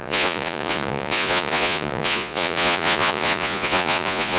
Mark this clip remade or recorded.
remade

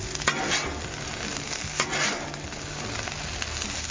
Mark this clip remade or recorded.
recorded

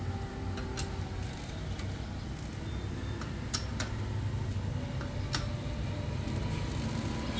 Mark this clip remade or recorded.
recorded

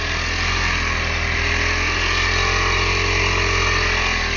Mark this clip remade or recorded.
recorded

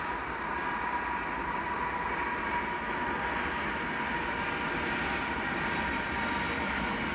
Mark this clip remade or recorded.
recorded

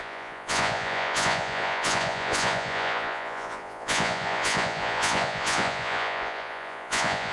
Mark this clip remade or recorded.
remade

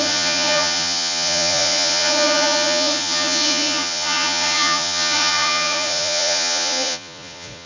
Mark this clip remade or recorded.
remade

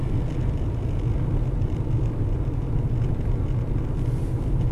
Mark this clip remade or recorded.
recorded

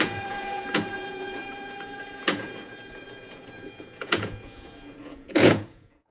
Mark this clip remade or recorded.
remade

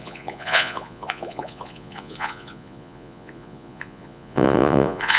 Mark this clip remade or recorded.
remade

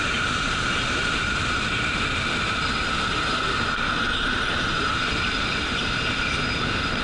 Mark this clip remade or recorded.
recorded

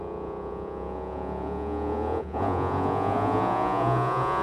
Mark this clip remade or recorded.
remade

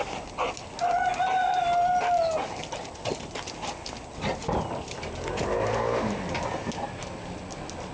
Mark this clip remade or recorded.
recorded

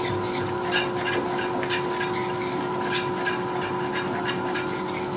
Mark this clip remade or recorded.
recorded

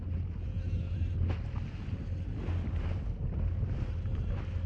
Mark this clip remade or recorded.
recorded